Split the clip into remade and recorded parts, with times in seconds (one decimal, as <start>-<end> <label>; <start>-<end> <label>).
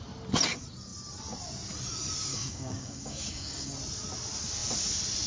0.0-2.3 recorded; 2.3-3.7 remade; 3.7-5.3 recorded